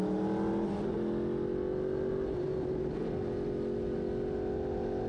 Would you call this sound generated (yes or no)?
no